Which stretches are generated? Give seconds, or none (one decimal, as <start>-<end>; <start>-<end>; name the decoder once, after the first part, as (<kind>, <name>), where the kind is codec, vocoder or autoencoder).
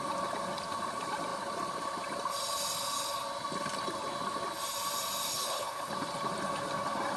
5.3-5.9 (codec, HILCodec)